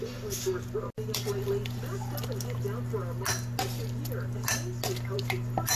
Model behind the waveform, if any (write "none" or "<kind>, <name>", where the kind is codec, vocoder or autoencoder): none